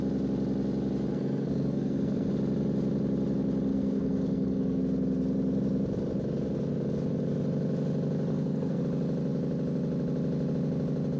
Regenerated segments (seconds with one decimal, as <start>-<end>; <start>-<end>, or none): 1.1-2.3; 3.7-4.8; 8.3-8.8